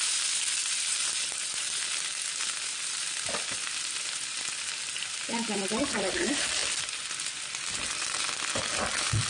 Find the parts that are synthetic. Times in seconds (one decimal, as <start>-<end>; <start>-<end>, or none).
none